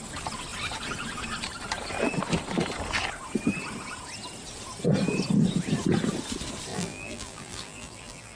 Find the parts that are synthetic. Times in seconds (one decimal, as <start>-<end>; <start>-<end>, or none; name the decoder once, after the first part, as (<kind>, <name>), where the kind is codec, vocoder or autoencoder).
6.7-8.4 (vocoder, BigVGAN v2)